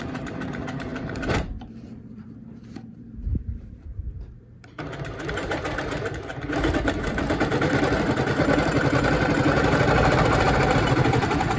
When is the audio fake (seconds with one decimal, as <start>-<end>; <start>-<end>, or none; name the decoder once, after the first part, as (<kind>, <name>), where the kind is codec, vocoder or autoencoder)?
0.0-6.3 (vocoder, BigVGAN v2); 7.1-7.5; 9.6-11.6